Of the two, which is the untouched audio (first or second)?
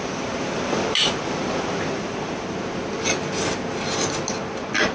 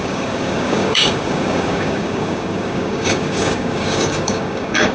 first